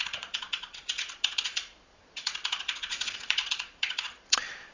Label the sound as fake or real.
fake